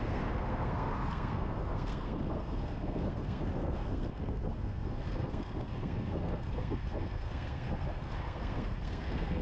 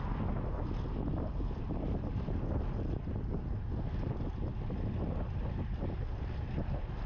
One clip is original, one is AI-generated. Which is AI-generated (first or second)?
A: first